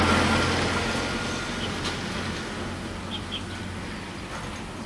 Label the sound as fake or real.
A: real